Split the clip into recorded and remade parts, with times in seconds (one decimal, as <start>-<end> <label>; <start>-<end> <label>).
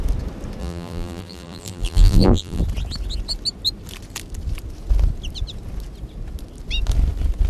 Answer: 0.0-0.6 recorded; 0.6-2.6 remade; 2.6-7.5 recorded